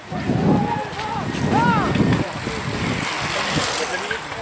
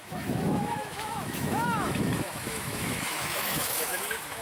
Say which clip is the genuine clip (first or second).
first